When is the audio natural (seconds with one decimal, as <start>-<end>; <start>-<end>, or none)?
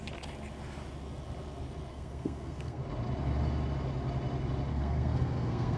0.0-1.9; 2.8-4.7